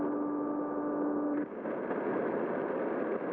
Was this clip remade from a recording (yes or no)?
no